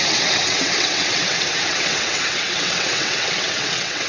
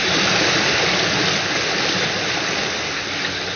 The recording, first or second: second